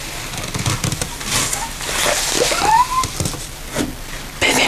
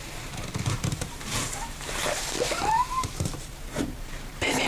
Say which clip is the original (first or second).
first